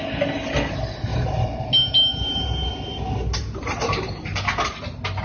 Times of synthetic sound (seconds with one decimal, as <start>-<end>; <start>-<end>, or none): 1.1-1.7; 2.1-2.7; 3.4-4.4